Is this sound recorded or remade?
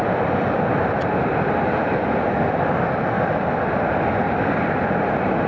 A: recorded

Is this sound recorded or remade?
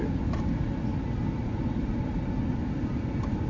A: recorded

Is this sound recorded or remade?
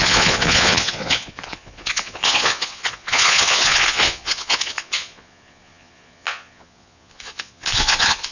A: remade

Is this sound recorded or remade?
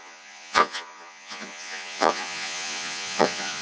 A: remade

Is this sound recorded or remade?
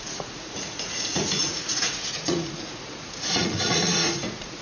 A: remade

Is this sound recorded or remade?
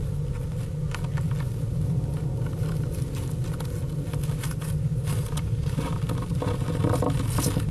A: recorded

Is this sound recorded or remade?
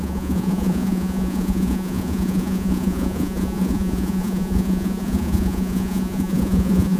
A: remade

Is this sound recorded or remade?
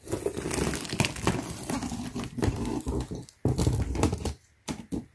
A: recorded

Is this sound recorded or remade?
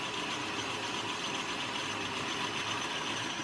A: recorded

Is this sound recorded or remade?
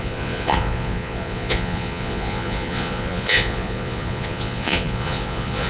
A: remade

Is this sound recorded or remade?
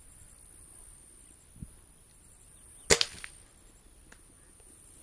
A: recorded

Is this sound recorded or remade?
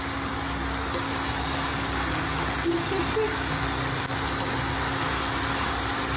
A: recorded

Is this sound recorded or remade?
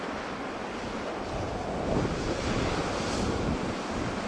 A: recorded